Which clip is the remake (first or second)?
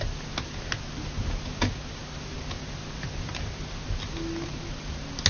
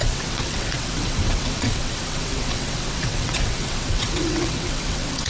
second